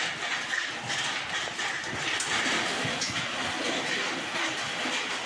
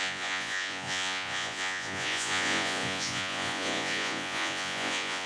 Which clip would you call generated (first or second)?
second